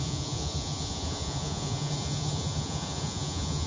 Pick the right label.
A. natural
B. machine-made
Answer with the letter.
B